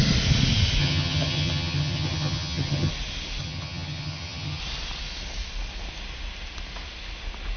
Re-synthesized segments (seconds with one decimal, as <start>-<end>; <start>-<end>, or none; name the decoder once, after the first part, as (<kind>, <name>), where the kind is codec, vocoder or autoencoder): 0.8-2.9 (vocoder, HiFi-GAN); 3.4-4.6